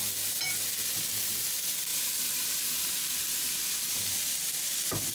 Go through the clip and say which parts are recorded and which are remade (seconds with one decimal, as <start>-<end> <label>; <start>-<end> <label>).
0.0-1.9 recorded; 1.9-4.5 remade; 4.5-5.1 recorded